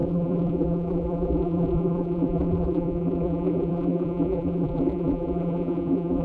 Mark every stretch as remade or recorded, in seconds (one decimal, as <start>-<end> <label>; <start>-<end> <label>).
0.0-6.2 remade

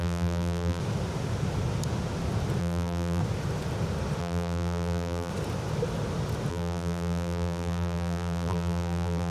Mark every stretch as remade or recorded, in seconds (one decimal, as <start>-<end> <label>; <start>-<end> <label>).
0.0-0.8 remade; 0.8-2.6 recorded; 2.6-3.2 remade; 3.2-4.2 recorded; 4.2-5.3 remade; 5.3-6.5 recorded; 6.5-9.3 remade

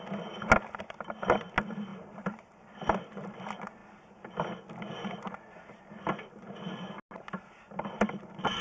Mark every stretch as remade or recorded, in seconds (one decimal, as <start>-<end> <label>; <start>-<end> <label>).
0.0-1.9 recorded; 1.9-3.4 remade; 3.4-8.6 recorded

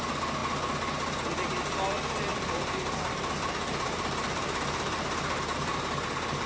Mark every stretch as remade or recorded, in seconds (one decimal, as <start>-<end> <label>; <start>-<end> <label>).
0.0-2.3 recorded; 2.3-5.8 remade; 5.8-6.5 recorded

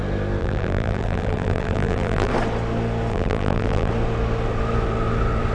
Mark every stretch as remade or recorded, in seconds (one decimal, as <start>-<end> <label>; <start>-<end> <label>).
0.0-0.4 recorded; 0.4-2.3 remade; 2.3-3.1 recorded; 3.1-3.9 remade; 3.9-5.5 recorded